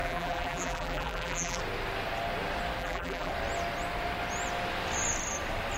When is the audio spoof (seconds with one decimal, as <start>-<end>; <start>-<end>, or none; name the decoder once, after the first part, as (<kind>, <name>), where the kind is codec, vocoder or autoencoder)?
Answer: 0.0-1.6 (vocoder, BigVGAN v2); 2.8-3.3